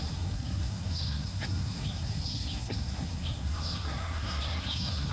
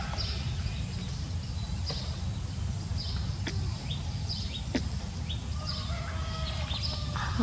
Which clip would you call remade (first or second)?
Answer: first